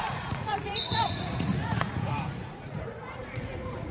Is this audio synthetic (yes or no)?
yes